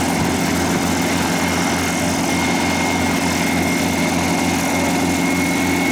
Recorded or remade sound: recorded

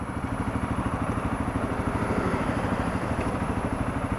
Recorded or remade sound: remade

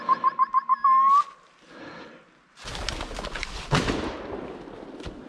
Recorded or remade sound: recorded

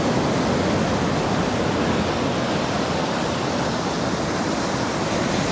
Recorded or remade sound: recorded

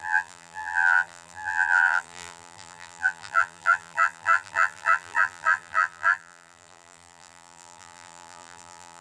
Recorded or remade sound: remade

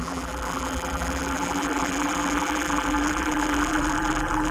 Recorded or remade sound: remade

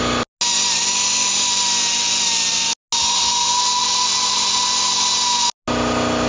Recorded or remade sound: recorded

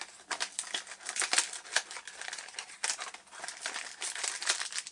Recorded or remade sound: recorded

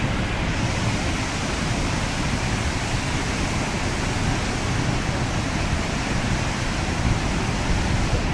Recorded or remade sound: recorded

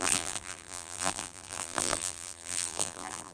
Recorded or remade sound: remade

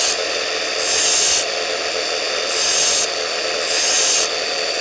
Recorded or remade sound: recorded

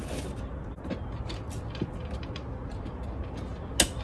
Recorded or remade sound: recorded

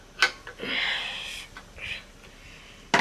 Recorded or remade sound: recorded